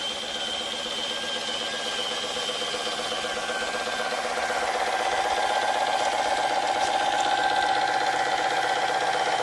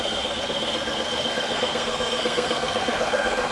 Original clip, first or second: first